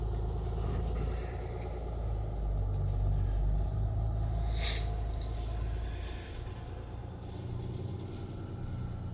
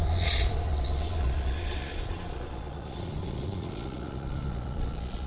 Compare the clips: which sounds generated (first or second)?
second